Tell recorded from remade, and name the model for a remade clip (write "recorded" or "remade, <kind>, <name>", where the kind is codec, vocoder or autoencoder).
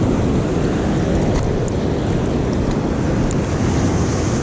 recorded